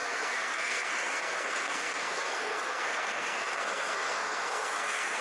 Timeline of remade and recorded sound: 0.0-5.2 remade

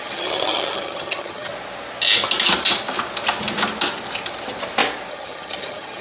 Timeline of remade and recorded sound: 0.0-1.5 remade; 1.5-5.1 recorded; 5.1-6.0 remade

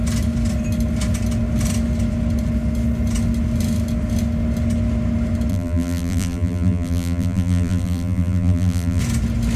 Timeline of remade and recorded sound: 0.0-5.5 recorded; 5.5-9.0 remade; 9.0-9.6 recorded

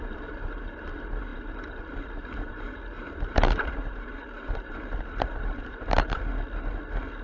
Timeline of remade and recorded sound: 0.0-6.3 remade; 6.3-7.2 recorded

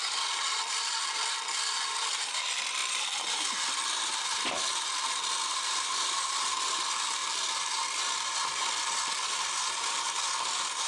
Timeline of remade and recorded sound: 0.0-10.9 remade